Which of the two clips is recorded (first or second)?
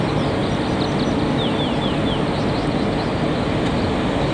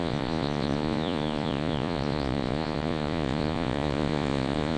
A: first